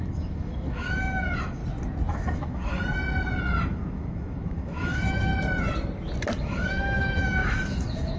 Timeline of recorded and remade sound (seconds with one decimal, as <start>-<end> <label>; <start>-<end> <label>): 0.0-1.6 remade; 1.6-2.1 recorded; 2.1-2.7 remade; 2.7-3.7 recorded; 3.7-5.3 remade; 5.3-6.4 recorded; 6.4-8.2 remade